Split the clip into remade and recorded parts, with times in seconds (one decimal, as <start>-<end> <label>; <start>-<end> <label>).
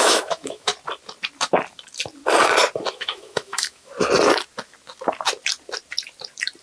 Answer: 0.0-0.7 remade; 0.7-2.9 recorded; 2.9-3.9 remade; 3.9-6.6 recorded